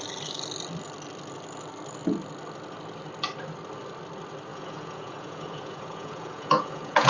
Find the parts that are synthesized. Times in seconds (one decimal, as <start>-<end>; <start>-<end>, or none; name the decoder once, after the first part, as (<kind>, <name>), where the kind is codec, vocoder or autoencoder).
4.5-7.1 (vocoder, Vocos)